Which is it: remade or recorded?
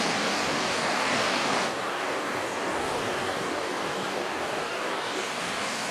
remade